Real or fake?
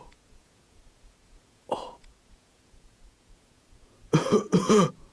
fake